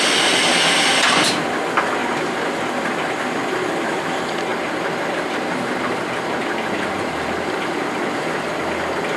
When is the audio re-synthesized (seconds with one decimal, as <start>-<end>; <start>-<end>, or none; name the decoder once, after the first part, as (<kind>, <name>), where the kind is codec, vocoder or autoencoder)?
2.0-2.6 (vocoder, BigVGAN v2); 4.5-8.5